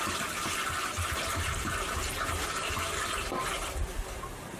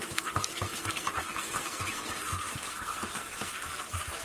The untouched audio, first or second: first